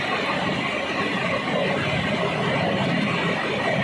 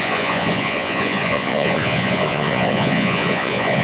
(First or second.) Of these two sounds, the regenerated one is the second